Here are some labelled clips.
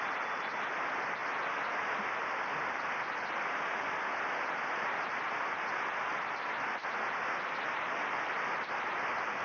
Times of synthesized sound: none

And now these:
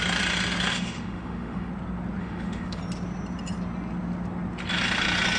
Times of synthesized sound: 0.7-1.7 (autoencoder, DAC-VAE); 2.2-2.8

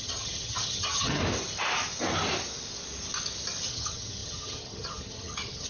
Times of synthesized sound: 0.0-1.2 (vocoder, HiFi-GAN); 3.7-5.7

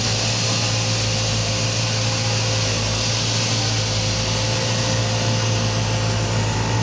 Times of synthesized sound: none